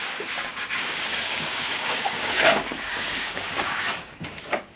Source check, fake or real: fake